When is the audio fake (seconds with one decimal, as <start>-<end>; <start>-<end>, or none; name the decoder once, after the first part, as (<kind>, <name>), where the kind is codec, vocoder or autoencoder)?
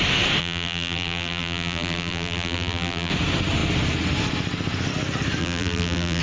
0.4-3.1 (vocoder, BigVGAN v2); 5.4-6.2